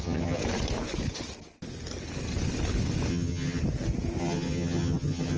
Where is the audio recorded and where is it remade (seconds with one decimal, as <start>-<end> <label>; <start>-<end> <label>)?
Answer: 0.0-0.4 remade; 0.4-3.1 recorded; 3.1-3.6 remade; 3.6-4.2 recorded; 4.2-5.4 remade